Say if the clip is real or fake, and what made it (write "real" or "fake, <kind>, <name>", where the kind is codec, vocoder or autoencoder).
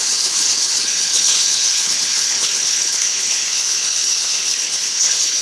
fake, codec, HILCodec